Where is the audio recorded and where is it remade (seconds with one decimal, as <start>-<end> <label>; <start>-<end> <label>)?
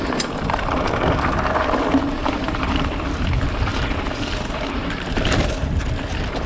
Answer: 0.0-2.2 recorded; 2.2-2.9 remade; 2.9-6.5 recorded